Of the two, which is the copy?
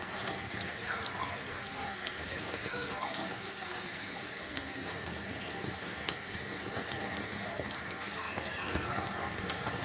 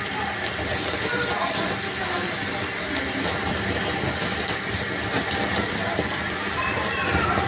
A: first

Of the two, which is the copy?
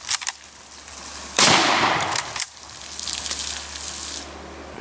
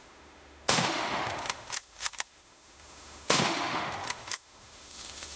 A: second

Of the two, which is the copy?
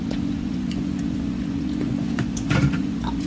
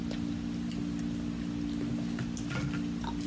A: first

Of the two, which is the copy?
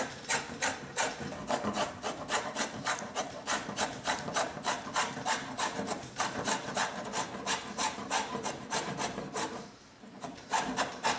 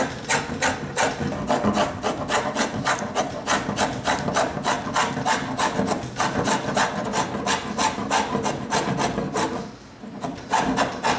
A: first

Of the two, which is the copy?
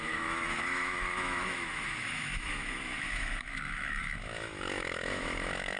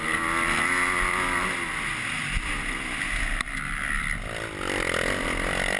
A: first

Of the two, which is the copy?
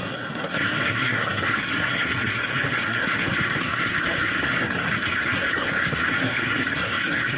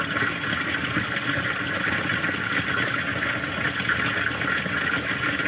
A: first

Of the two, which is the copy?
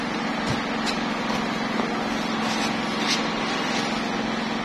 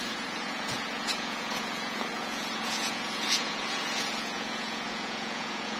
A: second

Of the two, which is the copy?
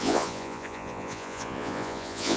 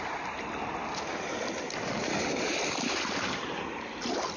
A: first